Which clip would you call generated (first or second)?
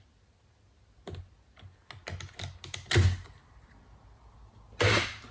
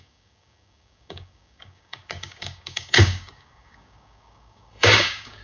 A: second